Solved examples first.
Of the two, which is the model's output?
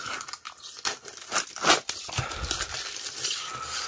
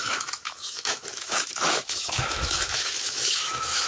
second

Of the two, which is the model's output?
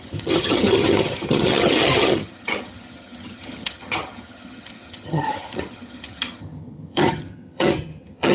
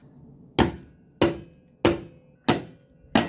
first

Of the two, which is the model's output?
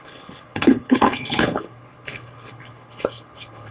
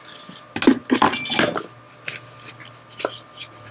first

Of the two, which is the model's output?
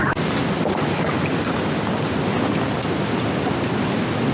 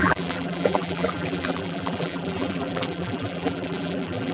second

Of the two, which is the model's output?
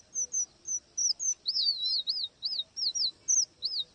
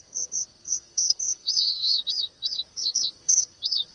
second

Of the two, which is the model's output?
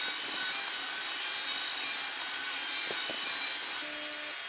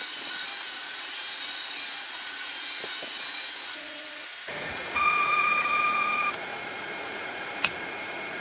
second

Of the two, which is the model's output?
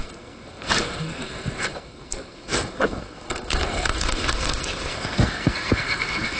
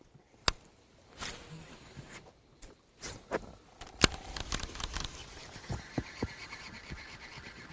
first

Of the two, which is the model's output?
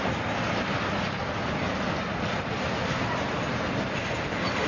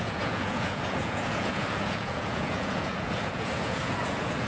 second